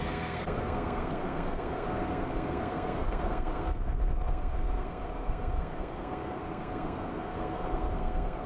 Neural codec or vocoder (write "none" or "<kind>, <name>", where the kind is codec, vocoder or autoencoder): codec, SNAC